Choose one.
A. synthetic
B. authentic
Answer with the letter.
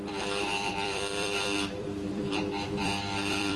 A